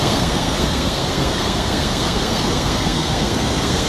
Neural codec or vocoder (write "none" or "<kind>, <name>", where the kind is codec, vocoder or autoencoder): codec, SNAC